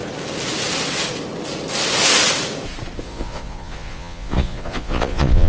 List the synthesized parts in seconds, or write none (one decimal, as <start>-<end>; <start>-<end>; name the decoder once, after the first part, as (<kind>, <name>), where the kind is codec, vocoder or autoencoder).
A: 3.0-5.5 (vocoder, Vocos)